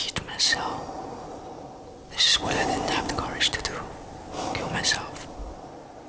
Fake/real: real